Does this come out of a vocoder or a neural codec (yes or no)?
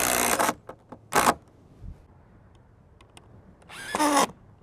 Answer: no